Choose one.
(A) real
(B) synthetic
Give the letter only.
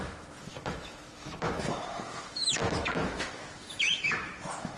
B